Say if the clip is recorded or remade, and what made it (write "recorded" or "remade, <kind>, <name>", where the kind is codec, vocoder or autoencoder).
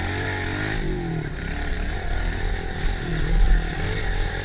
recorded